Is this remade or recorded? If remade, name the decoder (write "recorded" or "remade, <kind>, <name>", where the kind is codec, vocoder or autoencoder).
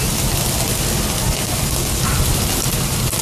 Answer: remade, vocoder, BigVGAN v2